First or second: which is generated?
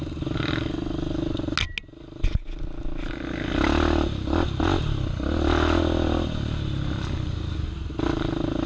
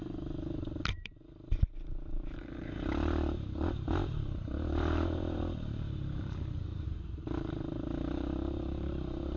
second